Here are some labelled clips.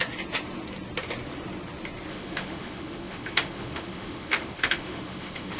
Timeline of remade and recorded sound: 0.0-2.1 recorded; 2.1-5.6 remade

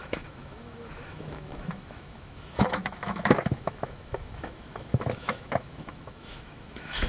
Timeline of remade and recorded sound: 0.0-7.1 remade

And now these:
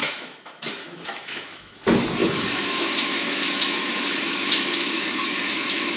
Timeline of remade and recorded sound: 0.0-1.8 remade; 1.8-2.2 recorded; 2.2-6.0 remade

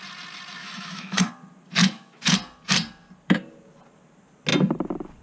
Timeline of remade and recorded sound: 0.0-0.6 recorded; 0.6-1.3 remade; 1.3-1.8 recorded; 1.8-2.3 remade; 2.3-5.2 recorded

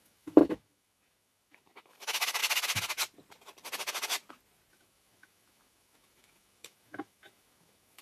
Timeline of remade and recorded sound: 0.0-2.4 remade; 2.4-4.7 recorded; 4.7-8.0 remade

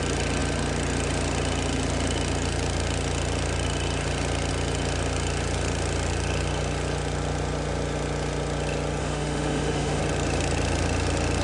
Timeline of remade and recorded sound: 0.0-9.0 recorded; 9.0-10.0 remade; 10.0-11.4 recorded